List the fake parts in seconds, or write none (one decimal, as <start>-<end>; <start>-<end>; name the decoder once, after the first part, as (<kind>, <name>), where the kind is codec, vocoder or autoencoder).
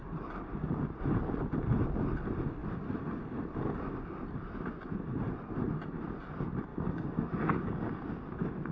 6.7-8.0 (codec, DAC)